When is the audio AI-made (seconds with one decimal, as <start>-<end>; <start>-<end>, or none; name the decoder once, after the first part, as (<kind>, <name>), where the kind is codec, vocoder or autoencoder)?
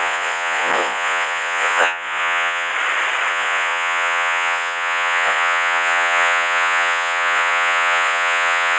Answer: 0.0-2.7 (vocoder, Vocos); 3.3-8.8